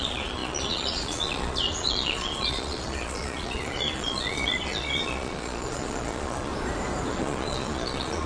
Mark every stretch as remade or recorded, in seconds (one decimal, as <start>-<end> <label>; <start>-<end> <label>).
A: 0.0-6.5 remade; 6.5-7.1 recorded; 7.1-8.3 remade